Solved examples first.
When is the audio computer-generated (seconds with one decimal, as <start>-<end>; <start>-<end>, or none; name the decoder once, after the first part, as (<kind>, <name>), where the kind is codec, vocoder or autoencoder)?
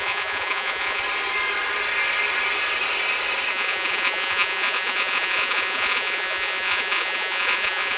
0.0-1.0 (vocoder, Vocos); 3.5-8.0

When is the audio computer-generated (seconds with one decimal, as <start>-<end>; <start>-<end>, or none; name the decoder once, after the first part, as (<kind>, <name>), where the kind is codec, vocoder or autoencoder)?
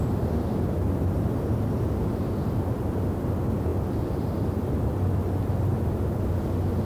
3.7-6.2 (vocoder, BigVGAN v2)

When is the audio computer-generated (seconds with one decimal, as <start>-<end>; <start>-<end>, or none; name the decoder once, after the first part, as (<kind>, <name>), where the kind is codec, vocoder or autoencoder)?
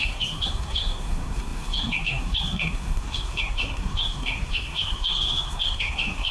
0.0-6.3 (codec, SNAC)